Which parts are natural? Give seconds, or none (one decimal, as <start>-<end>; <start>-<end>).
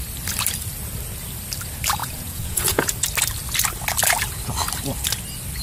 0.0-2.0; 2.9-5.6